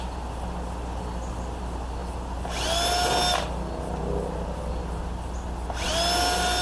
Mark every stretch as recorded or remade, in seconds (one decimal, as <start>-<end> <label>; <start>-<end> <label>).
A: 0.0-6.6 recorded